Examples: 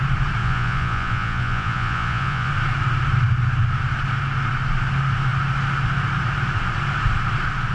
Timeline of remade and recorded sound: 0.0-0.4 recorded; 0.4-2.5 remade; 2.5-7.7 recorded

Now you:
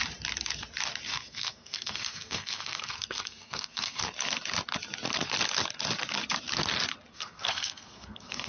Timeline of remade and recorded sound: 0.0-1.1 recorded; 1.1-4.0 remade; 4.0-7.1 recorded; 7.1-8.5 remade

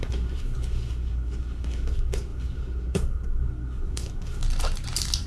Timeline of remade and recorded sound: 0.0-4.4 remade; 4.4-5.3 recorded